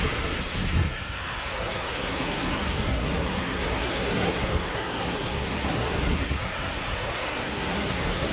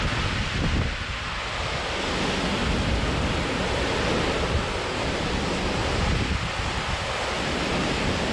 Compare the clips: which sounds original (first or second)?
second